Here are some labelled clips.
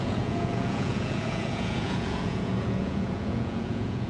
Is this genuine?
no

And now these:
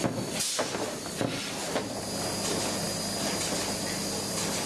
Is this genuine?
yes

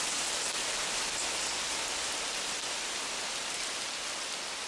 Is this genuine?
yes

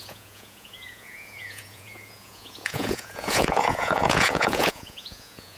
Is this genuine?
no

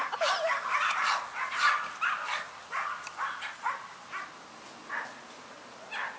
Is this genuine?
yes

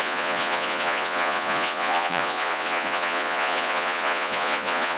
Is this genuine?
no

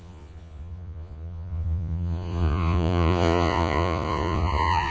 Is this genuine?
no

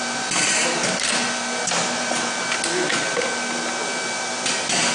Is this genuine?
yes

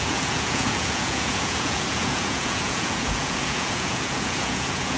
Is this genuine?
no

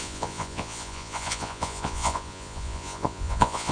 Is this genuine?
no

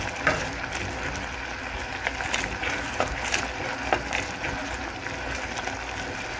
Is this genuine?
yes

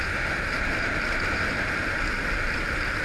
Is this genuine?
yes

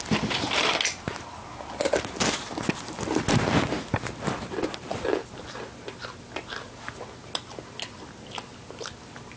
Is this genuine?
yes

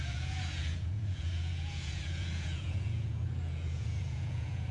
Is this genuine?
no